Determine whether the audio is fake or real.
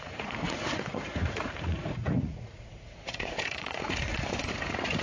fake